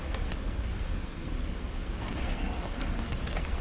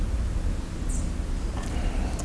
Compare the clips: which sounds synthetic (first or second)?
first